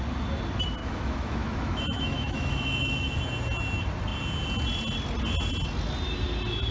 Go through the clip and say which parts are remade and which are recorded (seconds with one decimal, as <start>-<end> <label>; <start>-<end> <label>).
0.0-0.8 recorded; 0.8-3.2 remade; 3.2-6.7 recorded